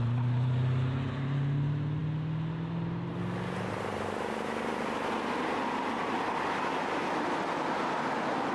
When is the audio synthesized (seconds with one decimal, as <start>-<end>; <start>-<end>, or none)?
none